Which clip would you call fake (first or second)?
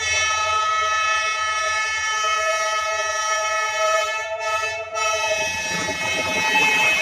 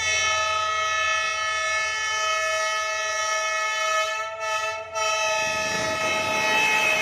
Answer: first